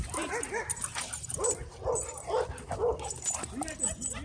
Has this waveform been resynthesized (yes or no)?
no